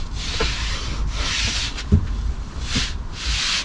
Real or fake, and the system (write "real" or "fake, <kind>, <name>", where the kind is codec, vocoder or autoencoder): real